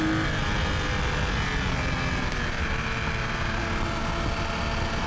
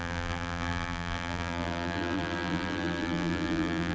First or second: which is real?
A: first